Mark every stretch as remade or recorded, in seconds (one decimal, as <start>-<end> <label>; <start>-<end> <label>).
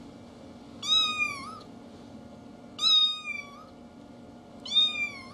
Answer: 0.0-5.3 recorded